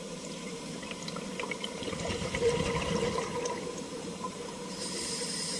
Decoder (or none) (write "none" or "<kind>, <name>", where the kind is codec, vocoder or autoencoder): vocoder, BigVGAN v2